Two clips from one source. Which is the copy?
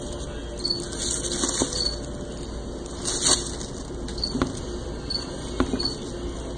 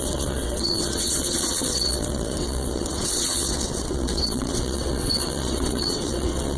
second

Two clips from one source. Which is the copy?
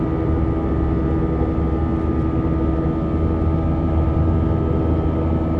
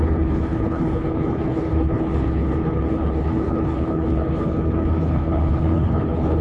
second